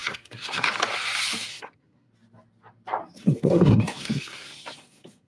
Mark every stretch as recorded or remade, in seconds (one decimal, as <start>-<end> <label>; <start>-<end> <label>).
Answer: 0.0-0.7 remade; 0.7-1.5 recorded; 1.5-2.1 remade; 2.1-3.0 recorded; 3.0-5.3 remade